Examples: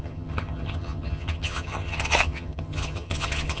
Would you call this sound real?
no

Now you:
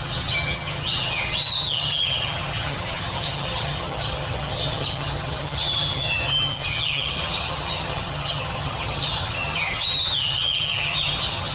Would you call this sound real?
no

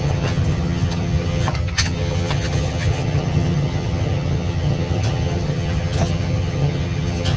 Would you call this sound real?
no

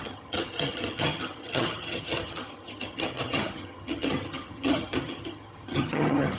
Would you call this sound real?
no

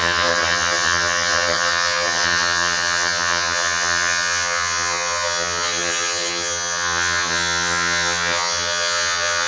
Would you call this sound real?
no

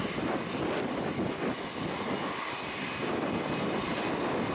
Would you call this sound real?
yes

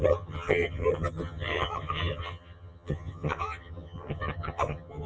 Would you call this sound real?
no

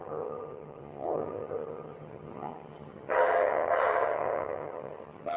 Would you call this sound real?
no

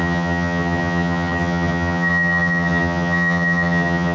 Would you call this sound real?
no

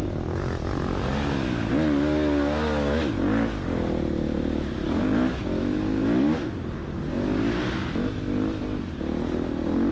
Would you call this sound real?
yes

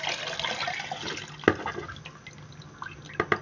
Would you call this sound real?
yes